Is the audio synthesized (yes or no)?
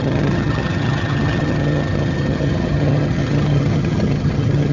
yes